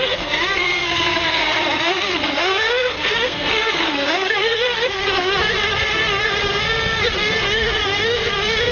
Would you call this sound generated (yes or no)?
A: yes